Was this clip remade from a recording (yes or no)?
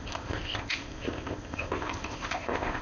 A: yes